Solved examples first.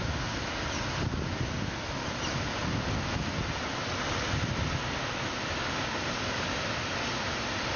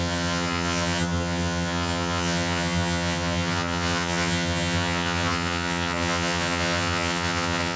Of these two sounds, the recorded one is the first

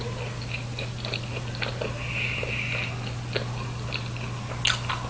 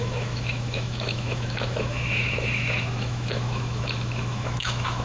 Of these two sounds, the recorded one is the first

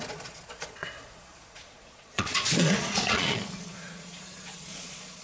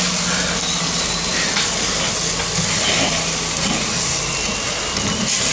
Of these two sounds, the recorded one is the second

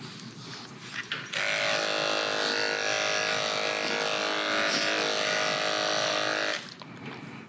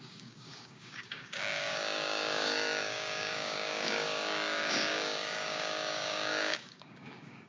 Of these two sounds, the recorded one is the first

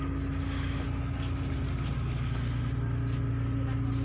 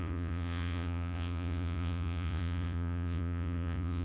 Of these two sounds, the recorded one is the first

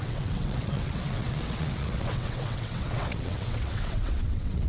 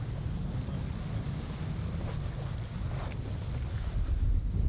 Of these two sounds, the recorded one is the second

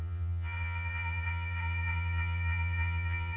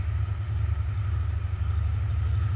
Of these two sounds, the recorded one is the second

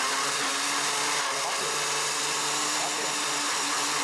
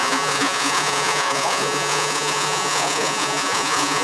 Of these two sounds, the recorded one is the first